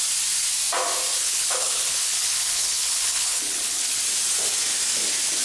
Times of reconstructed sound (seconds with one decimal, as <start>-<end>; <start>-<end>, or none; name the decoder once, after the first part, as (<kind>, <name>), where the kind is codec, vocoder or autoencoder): 1.2-4.0 (codec, HILCodec)